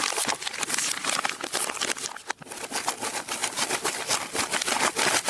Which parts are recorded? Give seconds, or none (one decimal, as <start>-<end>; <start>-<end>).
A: 0.0-0.8; 1.5-3.4